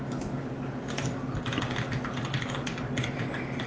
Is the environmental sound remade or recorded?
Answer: recorded